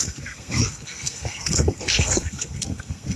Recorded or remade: remade